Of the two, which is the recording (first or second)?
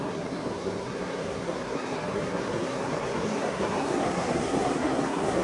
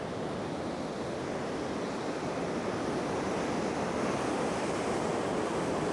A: second